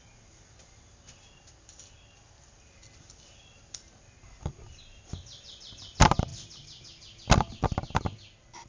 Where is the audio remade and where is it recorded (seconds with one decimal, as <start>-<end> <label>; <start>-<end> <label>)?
0.0-8.7 recorded